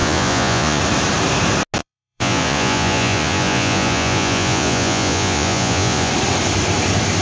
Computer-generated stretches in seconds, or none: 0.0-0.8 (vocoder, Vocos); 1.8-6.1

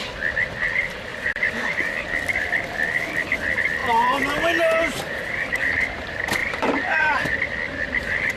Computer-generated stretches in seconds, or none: 1.1-1.9 (vocoder, BigVGAN v2); 3.8-5.6; 6.4-7.1